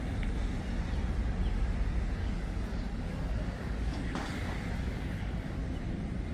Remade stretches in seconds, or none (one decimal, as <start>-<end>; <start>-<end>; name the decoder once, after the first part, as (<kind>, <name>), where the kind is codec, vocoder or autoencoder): 2.2-5.6 (codec, DAC)